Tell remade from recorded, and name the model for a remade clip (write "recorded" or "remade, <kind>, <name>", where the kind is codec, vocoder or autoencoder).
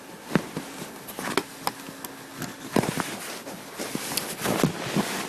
recorded